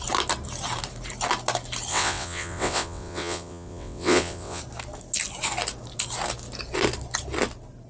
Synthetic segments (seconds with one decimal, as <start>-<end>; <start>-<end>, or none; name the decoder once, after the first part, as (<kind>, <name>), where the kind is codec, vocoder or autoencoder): 1.9-4.6 (vocoder, WaveNeXt)